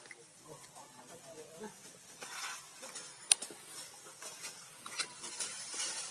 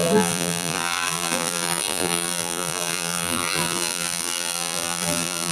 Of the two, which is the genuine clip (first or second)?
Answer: first